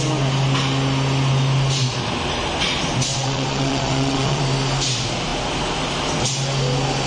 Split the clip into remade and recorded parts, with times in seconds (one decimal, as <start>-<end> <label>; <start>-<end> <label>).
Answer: 0.0-3.1 recorded; 3.1-4.4 remade; 4.4-7.1 recorded